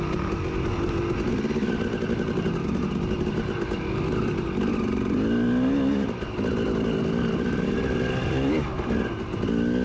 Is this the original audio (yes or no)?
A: yes